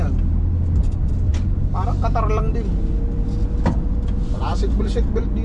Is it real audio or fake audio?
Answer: real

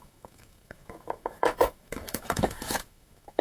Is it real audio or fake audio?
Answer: fake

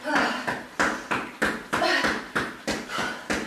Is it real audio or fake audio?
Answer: real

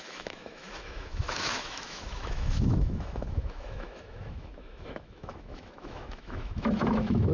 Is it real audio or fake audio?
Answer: fake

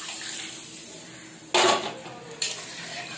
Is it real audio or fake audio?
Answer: real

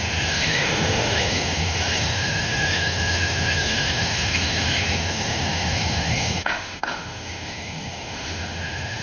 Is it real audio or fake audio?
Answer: fake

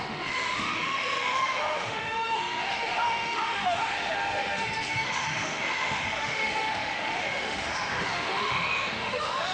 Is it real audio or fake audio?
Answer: fake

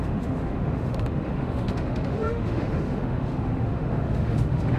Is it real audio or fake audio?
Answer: fake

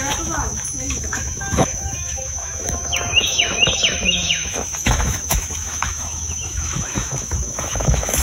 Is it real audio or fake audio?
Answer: fake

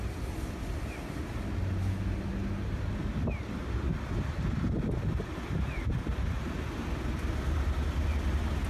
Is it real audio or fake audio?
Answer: real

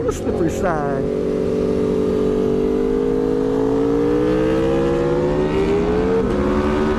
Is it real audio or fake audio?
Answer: real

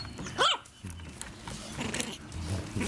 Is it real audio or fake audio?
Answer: real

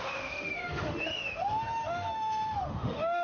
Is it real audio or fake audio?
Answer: fake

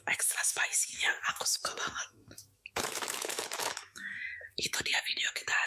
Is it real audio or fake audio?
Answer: fake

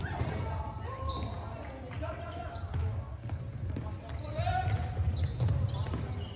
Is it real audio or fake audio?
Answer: real